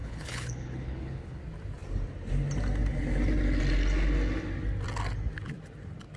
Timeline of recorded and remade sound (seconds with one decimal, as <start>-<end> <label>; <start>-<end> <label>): 0.0-1.4 remade; 1.4-6.2 recorded